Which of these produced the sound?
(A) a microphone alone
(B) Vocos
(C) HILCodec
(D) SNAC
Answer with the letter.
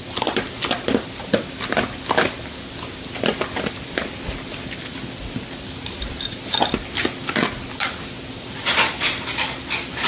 A